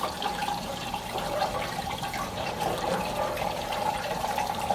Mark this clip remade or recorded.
remade